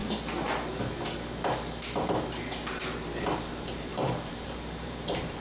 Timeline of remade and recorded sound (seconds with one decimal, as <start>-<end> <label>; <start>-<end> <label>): 0.0-3.2 recorded; 3.2-5.4 remade